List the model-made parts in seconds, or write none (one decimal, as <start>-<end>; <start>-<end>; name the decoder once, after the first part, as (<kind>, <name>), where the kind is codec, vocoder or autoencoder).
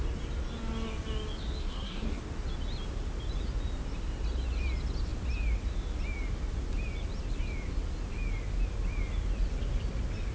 1.6-2.2 (codec, SNAC)